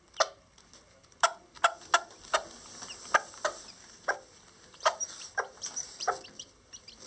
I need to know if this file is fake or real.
real